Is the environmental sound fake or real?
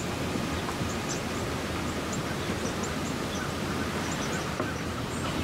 real